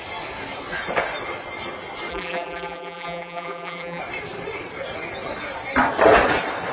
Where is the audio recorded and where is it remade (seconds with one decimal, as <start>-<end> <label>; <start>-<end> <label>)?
0.0-2.1 recorded; 2.1-4.0 remade; 4.0-6.7 recorded